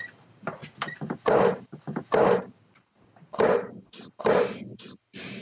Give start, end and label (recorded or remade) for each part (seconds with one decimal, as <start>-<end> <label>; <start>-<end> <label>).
0.0-0.6 remade; 0.6-3.3 recorded; 3.3-5.4 remade